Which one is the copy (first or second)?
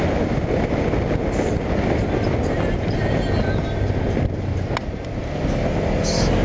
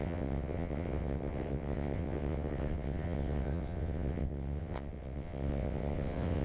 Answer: second